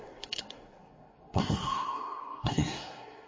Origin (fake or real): fake